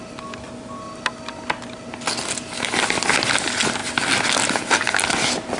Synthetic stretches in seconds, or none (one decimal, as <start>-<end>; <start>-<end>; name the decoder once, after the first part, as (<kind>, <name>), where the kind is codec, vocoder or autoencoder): none